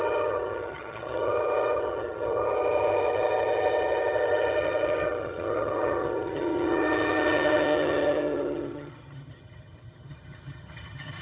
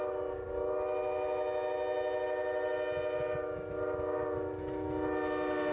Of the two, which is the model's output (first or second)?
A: first